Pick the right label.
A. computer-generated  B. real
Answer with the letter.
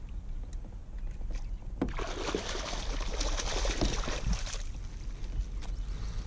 B